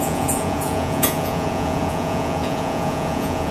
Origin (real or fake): fake